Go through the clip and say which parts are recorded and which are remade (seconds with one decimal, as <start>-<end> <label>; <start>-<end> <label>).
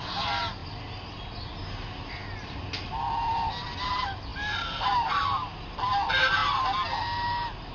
0.0-7.7 recorded